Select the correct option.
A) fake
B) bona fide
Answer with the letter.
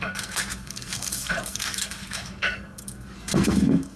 A